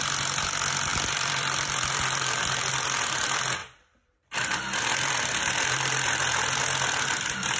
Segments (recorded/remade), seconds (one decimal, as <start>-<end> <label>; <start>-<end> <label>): 0.0-0.9 recorded; 0.9-2.7 remade; 2.7-3.6 recorded; 3.6-6.6 remade; 6.6-7.6 recorded